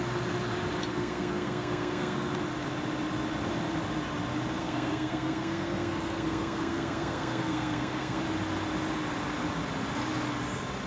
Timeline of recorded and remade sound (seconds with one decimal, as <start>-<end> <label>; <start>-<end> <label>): 0.0-0.9 recorded; 0.9-2.3 remade; 2.3-4.6 recorded; 4.6-8.2 remade; 8.2-10.9 recorded